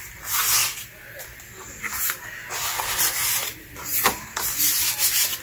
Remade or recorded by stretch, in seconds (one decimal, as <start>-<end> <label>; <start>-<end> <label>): 0.0-5.4 recorded